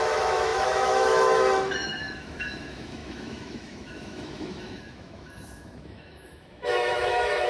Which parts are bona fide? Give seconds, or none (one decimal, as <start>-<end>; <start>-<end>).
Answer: none